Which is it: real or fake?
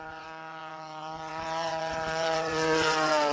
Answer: fake